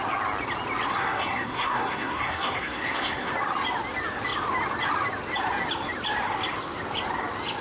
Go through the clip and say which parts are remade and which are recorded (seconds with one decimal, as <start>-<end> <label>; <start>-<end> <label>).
0.0-0.9 recorded; 0.9-3.3 remade; 3.3-7.6 recorded